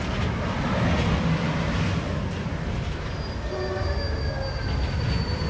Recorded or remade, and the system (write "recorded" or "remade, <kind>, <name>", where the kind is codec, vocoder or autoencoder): recorded